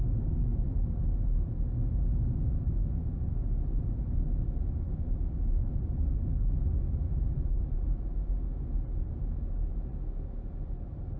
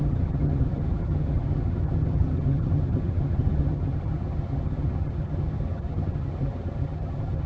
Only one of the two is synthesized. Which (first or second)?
second